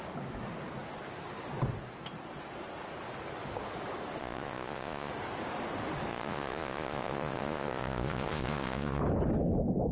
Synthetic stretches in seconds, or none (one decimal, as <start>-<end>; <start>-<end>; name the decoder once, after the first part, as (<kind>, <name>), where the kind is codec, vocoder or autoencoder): 4.2-5.1 (vocoder, Vocos); 6.1-9.0